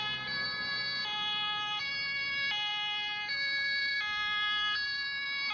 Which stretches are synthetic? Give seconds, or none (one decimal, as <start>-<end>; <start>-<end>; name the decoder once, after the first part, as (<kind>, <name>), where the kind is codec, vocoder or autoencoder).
none

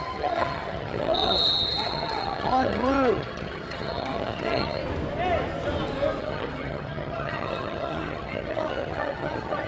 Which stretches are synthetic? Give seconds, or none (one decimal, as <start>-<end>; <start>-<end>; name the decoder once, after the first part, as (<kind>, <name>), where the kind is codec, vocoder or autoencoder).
0.0-4.8 (vocoder, HiFi-GAN); 6.2-9.7

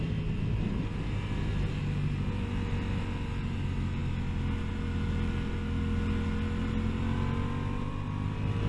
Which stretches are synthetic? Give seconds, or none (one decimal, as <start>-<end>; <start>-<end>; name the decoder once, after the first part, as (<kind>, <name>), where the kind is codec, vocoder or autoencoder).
none

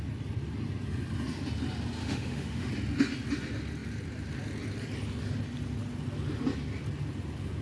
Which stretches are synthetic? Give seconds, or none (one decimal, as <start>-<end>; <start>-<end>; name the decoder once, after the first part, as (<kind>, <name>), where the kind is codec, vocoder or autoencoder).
2.0-2.7 (autoencoder, DAC-VAE)

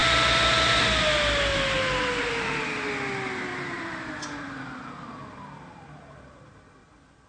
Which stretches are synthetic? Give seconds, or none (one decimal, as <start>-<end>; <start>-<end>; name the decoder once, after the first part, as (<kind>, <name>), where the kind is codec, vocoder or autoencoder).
0.0-0.8 (vocoder, BigVGAN v2); 1.5-2.6; 3.5-4.1

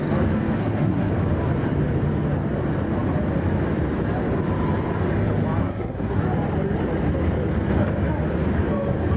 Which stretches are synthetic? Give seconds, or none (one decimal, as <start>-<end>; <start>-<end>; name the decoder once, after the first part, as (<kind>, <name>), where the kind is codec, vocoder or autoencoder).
0.6-1.1 (codec, SNAC); 5.6-6.2

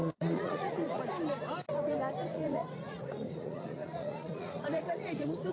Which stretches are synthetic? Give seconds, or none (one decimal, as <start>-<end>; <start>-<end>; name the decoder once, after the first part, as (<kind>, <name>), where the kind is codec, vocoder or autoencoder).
0.0-1.0 (vocoder, Vocos); 2.3-5.5